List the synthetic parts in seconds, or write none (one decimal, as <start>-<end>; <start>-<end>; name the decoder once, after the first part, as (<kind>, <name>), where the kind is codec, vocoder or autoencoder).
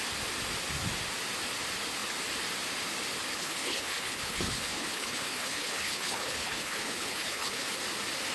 3.3-7.8 (codec, HILCodec)